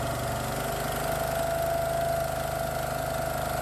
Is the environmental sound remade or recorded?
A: recorded